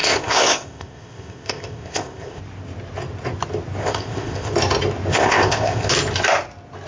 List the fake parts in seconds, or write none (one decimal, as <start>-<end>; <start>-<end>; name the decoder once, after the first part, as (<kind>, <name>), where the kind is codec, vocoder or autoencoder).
0.0-2.4 (codec, ZipCodec); 3.8-4.5; 5.1-5.9